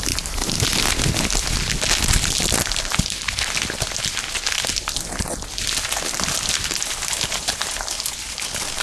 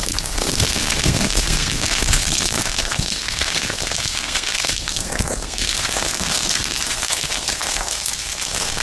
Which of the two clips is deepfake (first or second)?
second